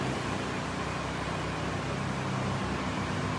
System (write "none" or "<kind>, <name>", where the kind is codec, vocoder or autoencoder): none